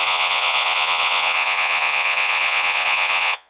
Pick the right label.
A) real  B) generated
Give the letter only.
B